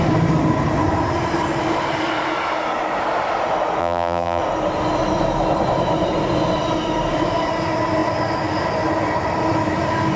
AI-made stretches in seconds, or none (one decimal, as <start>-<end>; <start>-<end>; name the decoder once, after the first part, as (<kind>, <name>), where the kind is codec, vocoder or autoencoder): 3.8-4.4 (vocoder, BigVGAN v2)